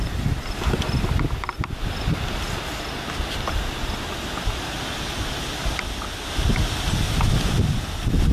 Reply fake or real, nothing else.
real